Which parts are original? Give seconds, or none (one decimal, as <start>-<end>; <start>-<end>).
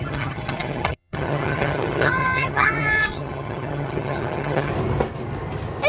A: 4.7-5.9